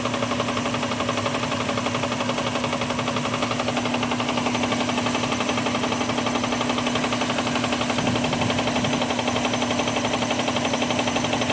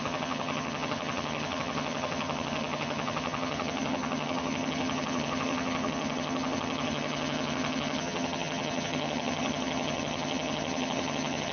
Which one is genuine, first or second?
first